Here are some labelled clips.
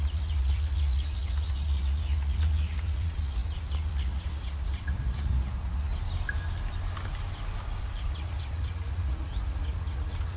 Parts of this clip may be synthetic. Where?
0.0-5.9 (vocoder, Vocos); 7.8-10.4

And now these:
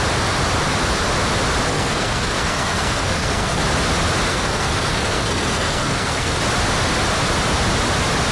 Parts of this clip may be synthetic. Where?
1.7-3.6 (codec, SNAC); 4.3-6.4

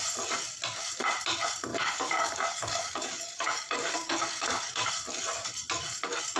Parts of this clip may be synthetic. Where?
1.7-4.9 (codec, DAC)

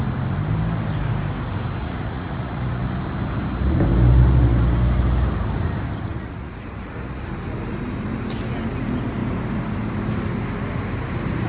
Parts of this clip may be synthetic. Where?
1.8-2.8 (vocoder, Vocos); 6.1-7.2

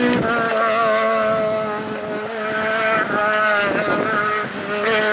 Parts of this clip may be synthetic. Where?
none

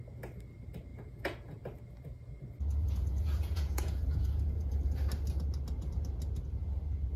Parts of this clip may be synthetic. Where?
0.9-1.6 (vocoder, Vocos); 2.8-4.8